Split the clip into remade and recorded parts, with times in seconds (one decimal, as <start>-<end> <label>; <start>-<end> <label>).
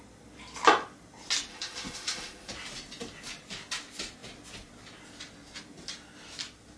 0.0-1.5 recorded; 1.5-2.5 remade; 2.5-6.8 recorded